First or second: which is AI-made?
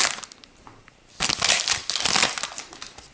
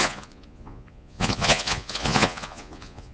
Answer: second